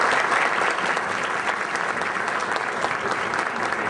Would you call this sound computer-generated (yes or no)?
no